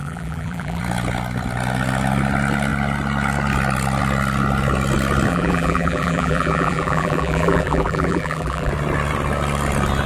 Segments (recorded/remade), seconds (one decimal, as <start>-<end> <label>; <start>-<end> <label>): 0.0-0.8 remade; 0.8-5.3 recorded; 5.3-8.7 remade; 8.7-10.1 recorded